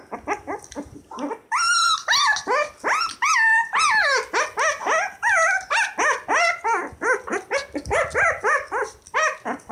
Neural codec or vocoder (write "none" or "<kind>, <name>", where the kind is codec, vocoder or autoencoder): none